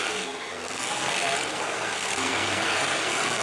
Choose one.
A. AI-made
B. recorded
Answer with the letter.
A